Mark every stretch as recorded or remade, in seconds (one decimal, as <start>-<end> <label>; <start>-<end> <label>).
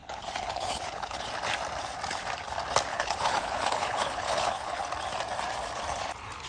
0.0-1.3 remade; 1.3-2.9 recorded; 2.9-4.8 remade; 4.8-6.5 recorded